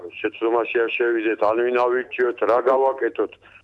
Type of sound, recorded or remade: remade